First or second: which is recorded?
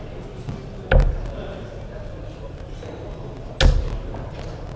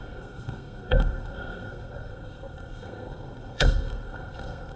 first